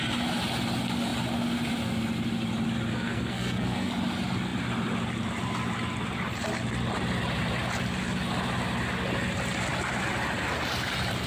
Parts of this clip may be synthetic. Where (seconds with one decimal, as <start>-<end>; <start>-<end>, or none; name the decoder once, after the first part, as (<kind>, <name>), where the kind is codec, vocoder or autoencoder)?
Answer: 2.9-3.9 (codec, SNAC)